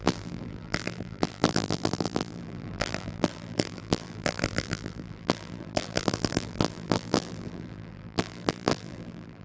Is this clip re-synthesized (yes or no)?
yes